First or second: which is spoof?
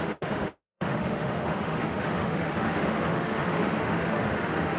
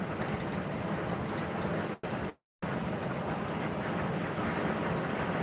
first